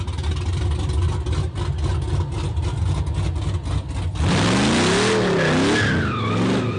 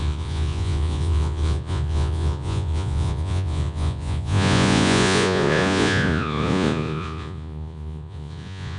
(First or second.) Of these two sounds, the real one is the first